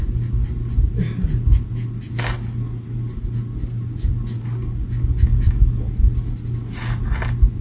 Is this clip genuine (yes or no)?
yes